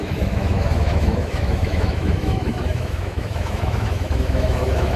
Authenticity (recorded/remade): remade